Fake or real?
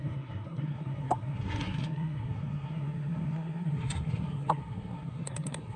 fake